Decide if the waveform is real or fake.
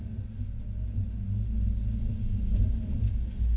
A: real